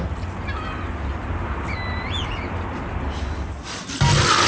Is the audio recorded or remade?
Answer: recorded